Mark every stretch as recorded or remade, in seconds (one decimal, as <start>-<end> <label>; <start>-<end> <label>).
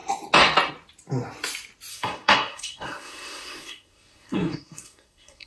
0.0-1.9 recorded; 1.9-5.5 remade